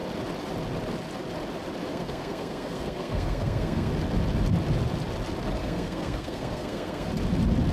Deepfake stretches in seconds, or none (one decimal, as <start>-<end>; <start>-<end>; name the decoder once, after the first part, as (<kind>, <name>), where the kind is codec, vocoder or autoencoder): 1.9-3.9 (codec, SNAC); 5.6-7.1